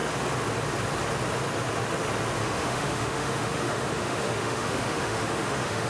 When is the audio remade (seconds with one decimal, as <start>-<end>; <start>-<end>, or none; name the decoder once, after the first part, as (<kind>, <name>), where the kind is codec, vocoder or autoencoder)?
2.4-5.9 (autoencoder, DAC-VAE)